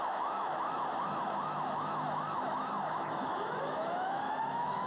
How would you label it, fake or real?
fake